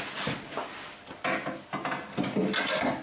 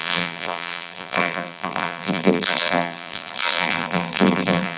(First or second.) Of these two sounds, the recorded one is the first